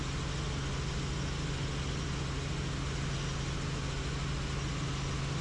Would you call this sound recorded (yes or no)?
yes